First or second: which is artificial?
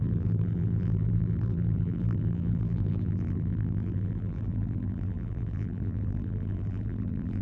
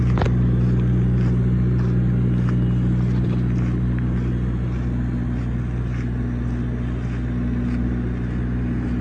first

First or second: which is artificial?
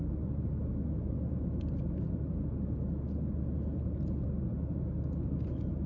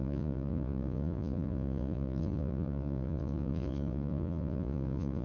second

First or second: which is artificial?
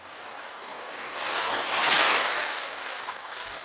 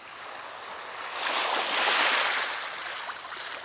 first